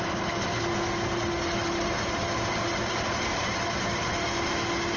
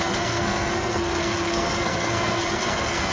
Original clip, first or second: first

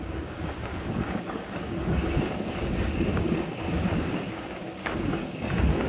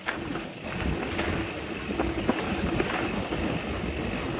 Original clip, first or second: second